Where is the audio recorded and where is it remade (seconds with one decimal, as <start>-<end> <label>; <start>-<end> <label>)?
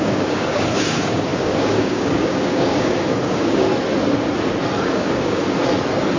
0.0-3.7 remade; 3.7-4.8 recorded; 4.8-5.4 remade; 5.4-6.2 recorded